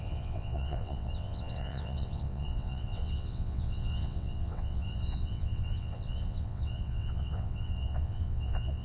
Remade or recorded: remade